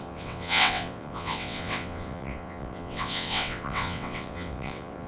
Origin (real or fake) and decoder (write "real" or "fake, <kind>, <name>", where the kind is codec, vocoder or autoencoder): fake, vocoder, WaveNeXt